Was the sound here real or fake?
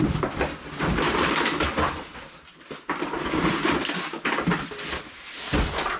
real